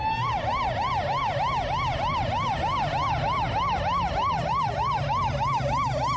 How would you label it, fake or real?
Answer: real